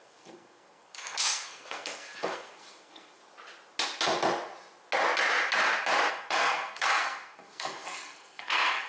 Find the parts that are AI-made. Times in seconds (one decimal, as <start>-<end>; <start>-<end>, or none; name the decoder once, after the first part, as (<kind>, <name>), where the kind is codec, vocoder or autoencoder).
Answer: 0.0-3.2 (codec, SNAC); 6.1-8.9